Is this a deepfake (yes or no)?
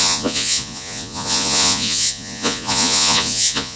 yes